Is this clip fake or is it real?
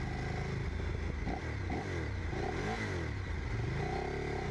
real